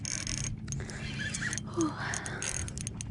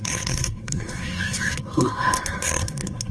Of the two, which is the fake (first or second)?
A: second